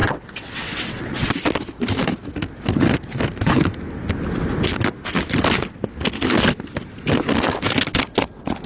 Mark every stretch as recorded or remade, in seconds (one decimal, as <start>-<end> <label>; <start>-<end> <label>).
0.0-1.3 remade; 1.3-8.7 recorded